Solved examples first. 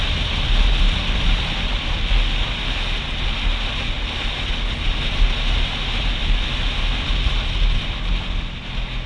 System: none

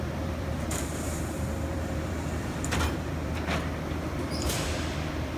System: vocoder, BigVGAN v2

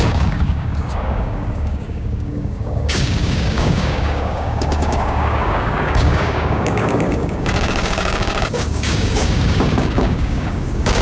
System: codec, DAC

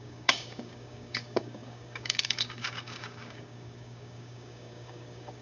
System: codec, DAC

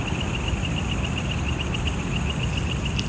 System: none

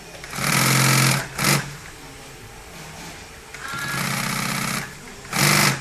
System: none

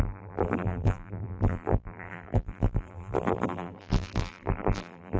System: vocoder, BigVGAN v2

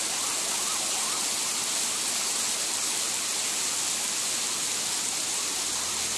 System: none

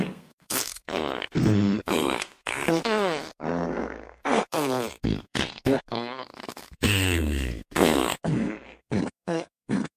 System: codec, SNAC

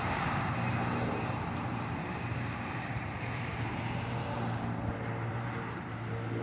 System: vocoder, BigVGAN v2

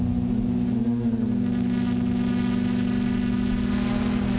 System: none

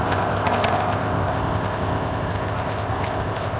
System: codec, ZipCodec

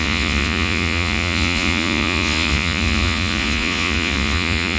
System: vocoder, Vocos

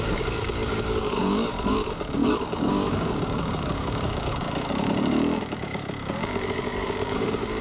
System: codec, DAC